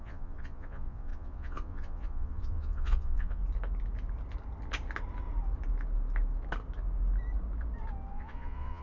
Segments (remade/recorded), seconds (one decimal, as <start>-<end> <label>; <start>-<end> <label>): 0.0-3.4 remade; 3.4-8.1 recorded; 8.1-8.8 remade